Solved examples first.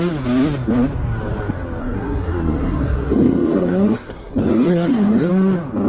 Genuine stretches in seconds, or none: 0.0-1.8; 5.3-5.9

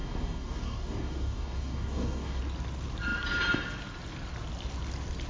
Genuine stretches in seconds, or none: 2.4-5.3

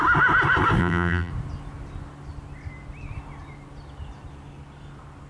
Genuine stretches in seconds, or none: 0.0-0.8; 1.3-5.3

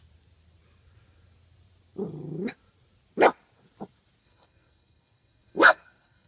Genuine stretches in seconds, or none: 0.0-4.2

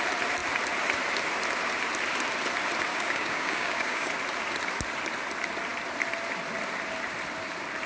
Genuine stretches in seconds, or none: 0.0-2.9; 4.1-7.9

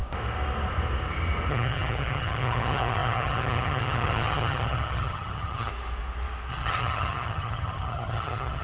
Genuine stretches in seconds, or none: 0.0-1.5; 5.7-6.5